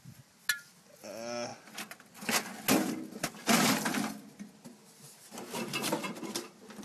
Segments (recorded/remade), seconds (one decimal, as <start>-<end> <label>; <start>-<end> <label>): 0.0-6.8 recorded